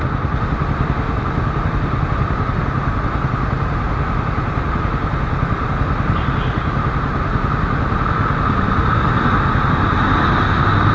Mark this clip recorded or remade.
recorded